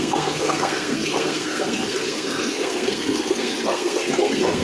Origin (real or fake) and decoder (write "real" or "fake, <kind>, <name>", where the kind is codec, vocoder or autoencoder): fake, codec, SNAC